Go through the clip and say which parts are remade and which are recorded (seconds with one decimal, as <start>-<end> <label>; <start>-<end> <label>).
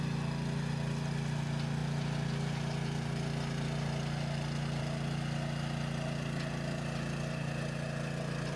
0.0-8.6 recorded